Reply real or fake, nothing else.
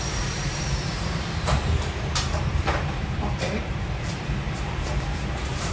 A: fake